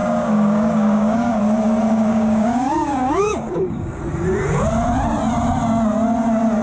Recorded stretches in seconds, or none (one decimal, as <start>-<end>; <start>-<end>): 1.4-2.1; 4.0-6.6